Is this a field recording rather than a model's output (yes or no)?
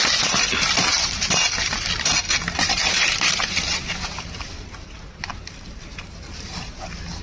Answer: yes